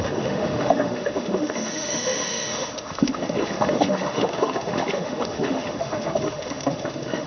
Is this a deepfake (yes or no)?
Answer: yes